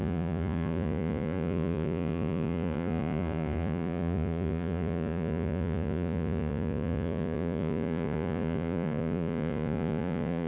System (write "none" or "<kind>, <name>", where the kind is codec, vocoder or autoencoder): vocoder, Vocos